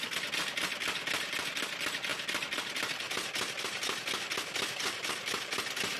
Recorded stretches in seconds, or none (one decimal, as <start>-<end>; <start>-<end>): 0.0-6.0